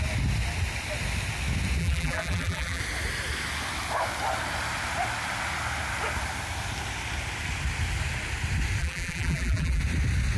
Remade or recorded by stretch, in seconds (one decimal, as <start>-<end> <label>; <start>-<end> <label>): 0.0-1.8 recorded; 1.8-2.8 remade; 2.8-8.8 recorded; 8.8-9.8 remade; 9.8-10.4 recorded